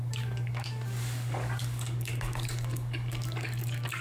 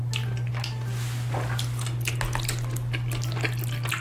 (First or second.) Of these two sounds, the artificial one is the first